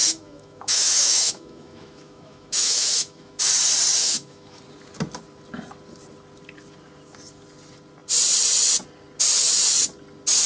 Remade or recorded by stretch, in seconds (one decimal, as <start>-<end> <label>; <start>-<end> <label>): 0.0-3.4 remade; 3.4-4.0 recorded; 4.0-4.6 remade; 4.6-10.5 recorded